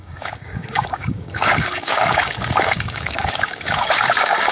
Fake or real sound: fake